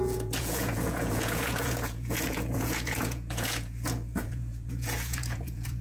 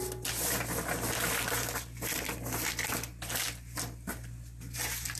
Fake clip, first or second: first